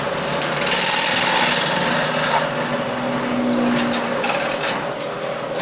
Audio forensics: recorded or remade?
recorded